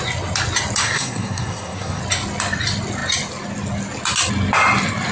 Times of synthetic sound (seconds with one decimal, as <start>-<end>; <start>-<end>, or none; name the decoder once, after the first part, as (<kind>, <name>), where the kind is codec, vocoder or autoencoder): 0.8-2.0 (codec, SNAC)